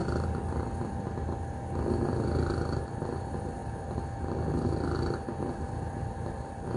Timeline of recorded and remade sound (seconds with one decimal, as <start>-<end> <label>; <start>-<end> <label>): 0.0-6.8 recorded